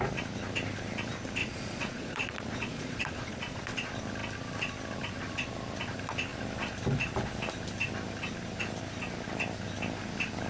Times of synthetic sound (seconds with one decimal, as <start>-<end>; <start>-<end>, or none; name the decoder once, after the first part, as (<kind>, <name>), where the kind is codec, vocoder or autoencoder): 1.4-3.6 (vocoder, Vocos)